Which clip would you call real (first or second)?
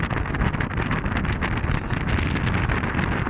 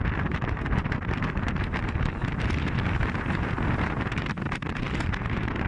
first